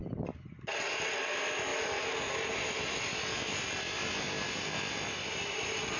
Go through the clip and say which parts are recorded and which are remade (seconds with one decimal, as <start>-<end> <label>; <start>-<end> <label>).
0.0-6.0 recorded